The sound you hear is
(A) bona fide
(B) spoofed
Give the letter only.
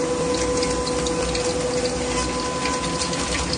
A